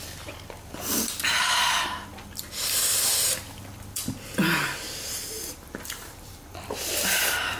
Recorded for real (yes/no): yes